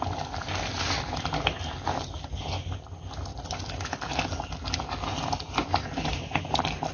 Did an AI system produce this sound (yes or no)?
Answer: no